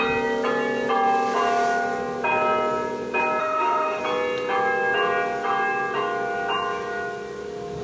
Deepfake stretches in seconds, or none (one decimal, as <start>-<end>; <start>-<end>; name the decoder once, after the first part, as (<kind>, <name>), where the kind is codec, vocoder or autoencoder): 3.4-4.0 (autoencoder, DAC-VAE)